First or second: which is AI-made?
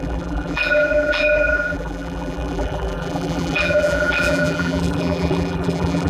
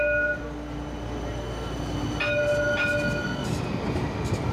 first